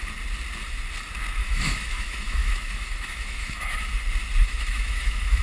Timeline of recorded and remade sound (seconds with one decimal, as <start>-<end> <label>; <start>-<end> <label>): 0.0-1.4 recorded; 1.4-3.9 remade; 3.9-4.4 recorded; 4.4-5.4 remade